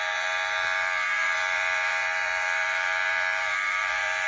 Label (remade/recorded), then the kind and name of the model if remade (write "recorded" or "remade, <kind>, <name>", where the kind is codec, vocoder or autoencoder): remade, vocoder, BigVGAN v2